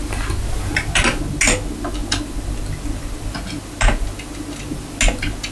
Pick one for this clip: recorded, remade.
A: recorded